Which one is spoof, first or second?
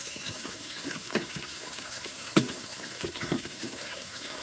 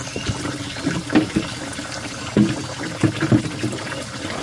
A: first